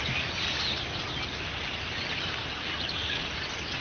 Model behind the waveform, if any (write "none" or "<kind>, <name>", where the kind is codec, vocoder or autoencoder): none